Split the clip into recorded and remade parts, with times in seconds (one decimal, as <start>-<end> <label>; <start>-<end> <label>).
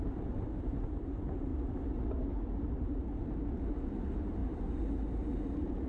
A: 0.0-1.5 remade; 1.5-2.8 recorded; 2.8-5.9 remade